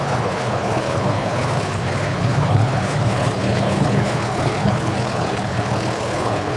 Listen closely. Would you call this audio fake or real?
fake